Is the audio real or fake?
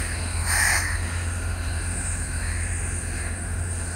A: fake